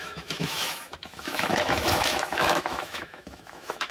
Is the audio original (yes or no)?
no